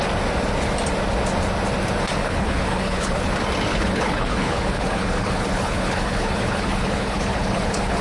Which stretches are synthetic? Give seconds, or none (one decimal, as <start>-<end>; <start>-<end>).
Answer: 2.2-3.3; 3.7-8.0